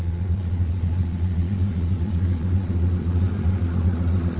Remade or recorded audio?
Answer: remade